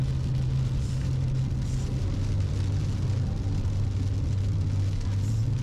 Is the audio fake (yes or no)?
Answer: no